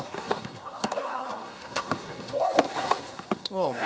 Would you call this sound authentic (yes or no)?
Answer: no